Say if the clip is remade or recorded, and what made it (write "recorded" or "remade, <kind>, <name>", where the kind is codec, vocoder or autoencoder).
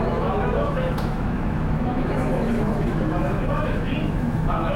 remade, autoencoder, DAC-VAE